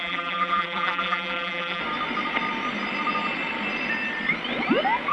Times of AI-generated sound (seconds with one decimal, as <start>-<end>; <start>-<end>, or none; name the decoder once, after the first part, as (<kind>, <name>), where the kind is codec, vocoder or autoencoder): 0.0-1.8 (vocoder, BigVGAN v2)